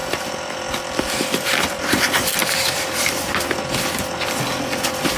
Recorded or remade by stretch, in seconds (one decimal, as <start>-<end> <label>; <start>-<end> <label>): 0.0-2.4 recorded; 2.4-3.4 remade; 3.4-5.2 recorded